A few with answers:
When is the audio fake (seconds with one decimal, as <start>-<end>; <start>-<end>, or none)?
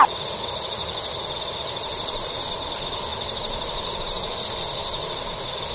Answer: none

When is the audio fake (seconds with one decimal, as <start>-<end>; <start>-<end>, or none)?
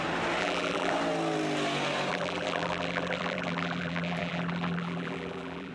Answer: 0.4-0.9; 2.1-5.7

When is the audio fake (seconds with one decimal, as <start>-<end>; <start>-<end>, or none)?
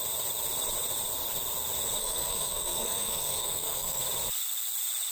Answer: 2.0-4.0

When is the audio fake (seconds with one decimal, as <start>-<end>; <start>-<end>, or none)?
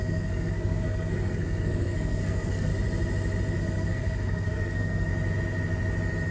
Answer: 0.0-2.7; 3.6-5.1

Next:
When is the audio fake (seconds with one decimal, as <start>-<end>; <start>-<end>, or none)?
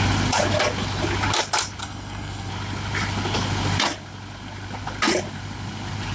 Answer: 1.8-2.5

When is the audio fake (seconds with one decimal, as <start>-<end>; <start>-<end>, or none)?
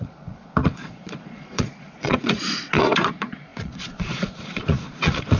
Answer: 0.0-5.4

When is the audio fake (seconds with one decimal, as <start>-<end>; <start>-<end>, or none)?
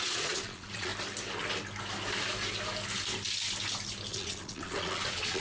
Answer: 0.0-0.9; 4.1-5.4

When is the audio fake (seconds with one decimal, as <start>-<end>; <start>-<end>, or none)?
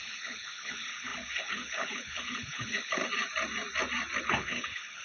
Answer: 0.0-3.0; 4.2-5.0